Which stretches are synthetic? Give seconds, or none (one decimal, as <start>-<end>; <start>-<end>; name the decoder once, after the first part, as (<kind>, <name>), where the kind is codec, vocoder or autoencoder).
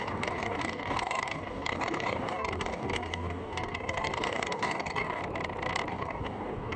0.0-5.2 (codec, DAC); 5.9-6.8